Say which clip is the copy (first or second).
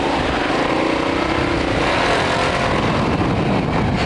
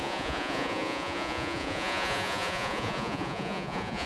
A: second